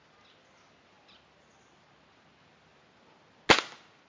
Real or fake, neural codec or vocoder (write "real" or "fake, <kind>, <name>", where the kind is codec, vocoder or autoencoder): real